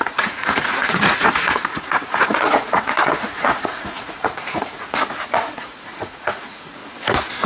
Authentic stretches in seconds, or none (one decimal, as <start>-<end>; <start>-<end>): 6.8-7.5

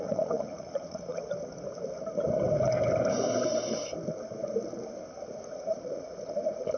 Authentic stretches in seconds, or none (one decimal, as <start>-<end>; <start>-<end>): 1.2-5.3

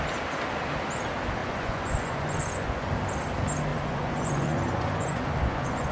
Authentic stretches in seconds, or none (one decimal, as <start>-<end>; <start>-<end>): 0.0-1.4; 2.9-3.7